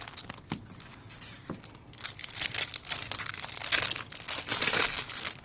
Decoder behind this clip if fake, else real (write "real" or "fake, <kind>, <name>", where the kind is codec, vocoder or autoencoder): real